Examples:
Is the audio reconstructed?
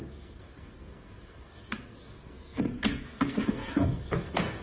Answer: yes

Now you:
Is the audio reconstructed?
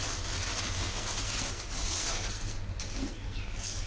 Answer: yes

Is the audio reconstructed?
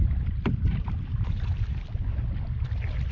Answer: no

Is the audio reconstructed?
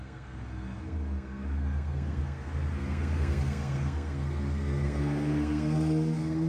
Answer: yes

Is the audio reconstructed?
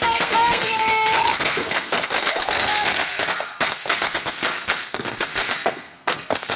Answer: yes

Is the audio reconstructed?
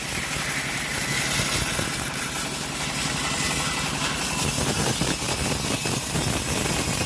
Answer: no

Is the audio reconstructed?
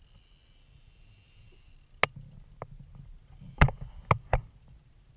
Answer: no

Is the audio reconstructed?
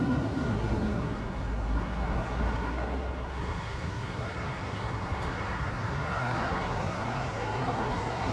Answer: yes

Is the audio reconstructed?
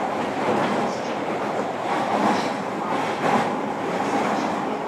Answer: no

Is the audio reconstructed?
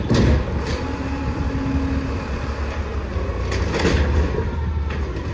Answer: no